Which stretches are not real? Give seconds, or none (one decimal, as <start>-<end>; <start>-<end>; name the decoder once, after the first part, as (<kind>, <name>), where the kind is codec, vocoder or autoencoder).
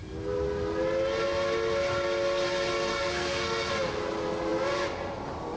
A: 2.9-3.7 (codec, SNAC)